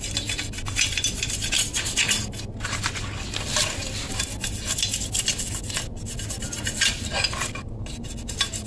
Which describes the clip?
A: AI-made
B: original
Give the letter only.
B